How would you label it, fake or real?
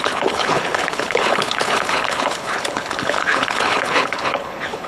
fake